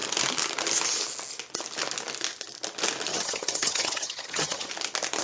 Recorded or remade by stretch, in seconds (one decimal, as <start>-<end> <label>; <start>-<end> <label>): 0.0-3.1 recorded; 3.1-4.7 remade; 4.7-5.2 recorded